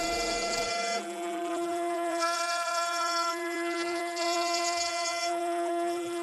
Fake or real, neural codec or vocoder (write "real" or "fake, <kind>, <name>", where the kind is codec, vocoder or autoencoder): fake, vocoder, BigVGAN v2